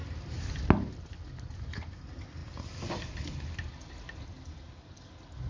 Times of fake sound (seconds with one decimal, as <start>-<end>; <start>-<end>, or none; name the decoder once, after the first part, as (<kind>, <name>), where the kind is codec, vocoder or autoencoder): none